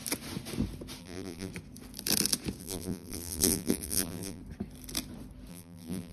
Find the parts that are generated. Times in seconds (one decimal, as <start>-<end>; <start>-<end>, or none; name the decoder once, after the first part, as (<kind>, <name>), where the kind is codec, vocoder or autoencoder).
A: 1.0-1.5 (vocoder, BigVGAN v2); 2.6-4.4; 5.5-6.1